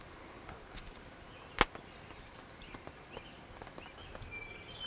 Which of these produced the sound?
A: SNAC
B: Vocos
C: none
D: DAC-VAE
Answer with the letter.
C